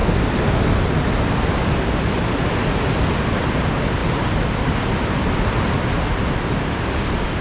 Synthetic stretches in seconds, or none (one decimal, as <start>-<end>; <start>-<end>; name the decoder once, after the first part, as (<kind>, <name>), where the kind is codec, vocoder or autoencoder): none